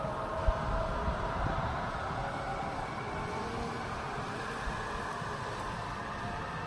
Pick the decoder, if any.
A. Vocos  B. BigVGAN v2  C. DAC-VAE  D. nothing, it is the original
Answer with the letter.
D